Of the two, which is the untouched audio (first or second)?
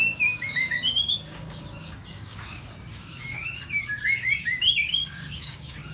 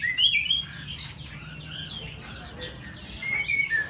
second